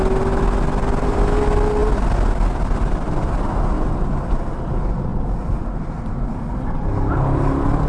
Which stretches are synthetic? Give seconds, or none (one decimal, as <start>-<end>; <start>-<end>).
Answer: none